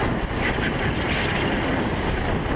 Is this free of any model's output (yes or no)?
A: yes